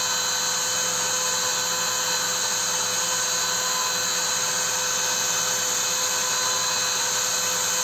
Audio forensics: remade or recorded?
recorded